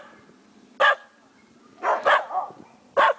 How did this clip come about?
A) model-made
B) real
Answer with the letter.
B